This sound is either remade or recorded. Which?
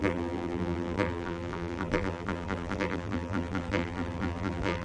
remade